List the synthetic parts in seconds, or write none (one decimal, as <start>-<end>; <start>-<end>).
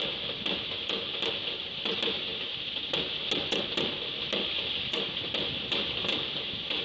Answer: none